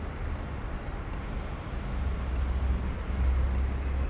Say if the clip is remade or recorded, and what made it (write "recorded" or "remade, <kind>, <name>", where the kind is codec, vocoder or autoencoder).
recorded